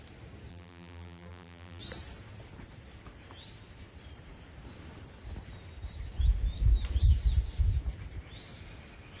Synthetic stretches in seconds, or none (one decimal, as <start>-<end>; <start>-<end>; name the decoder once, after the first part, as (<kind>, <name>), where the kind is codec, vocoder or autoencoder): 0.5-1.8 (vocoder, BigVGAN v2)